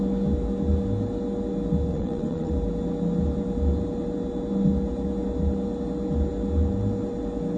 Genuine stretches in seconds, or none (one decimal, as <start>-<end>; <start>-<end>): 0.0-1.9; 2.5-7.6